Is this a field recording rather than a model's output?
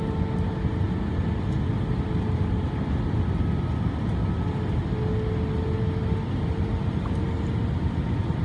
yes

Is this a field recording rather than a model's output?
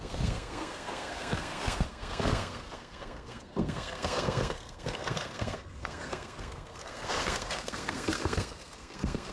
no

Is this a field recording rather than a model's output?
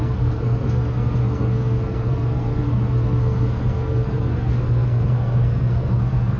no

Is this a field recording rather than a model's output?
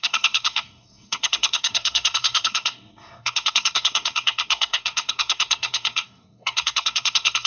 no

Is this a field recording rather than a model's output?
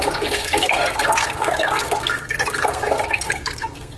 no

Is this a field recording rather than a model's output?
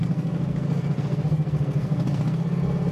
no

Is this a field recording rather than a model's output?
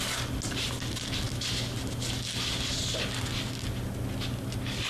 yes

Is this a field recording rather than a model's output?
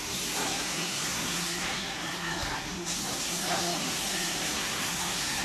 no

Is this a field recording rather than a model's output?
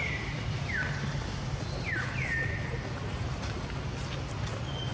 yes